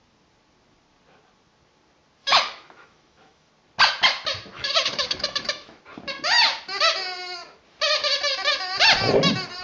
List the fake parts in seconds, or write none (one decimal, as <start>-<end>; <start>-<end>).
2.2-3.5; 4.5-5.8